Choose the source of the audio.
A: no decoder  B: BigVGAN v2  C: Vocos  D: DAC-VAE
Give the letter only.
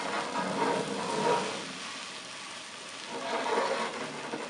A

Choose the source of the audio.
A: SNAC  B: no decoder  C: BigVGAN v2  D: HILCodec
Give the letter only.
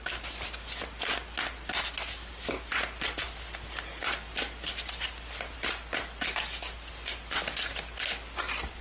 B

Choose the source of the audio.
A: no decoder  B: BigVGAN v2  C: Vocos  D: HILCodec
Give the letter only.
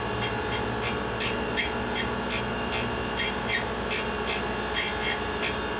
A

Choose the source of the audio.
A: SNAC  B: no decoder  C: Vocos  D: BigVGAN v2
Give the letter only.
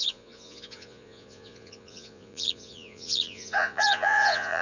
C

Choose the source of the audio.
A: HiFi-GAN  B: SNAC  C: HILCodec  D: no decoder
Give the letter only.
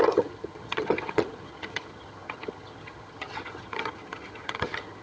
A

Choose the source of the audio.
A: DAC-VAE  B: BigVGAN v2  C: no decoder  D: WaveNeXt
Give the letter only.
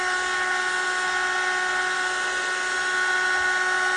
C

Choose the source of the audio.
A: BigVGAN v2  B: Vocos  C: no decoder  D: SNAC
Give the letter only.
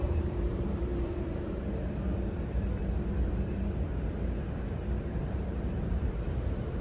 A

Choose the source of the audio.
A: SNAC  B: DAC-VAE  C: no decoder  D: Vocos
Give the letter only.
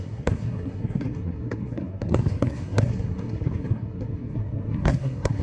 A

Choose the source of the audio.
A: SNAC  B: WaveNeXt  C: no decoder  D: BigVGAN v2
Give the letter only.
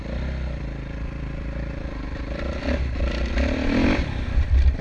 D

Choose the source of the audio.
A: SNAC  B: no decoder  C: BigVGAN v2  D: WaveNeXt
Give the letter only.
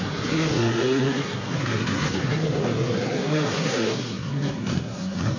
A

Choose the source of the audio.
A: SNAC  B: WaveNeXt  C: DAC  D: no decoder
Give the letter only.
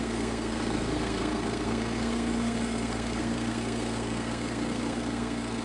A